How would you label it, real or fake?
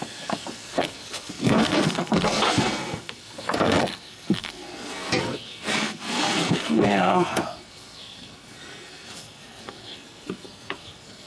fake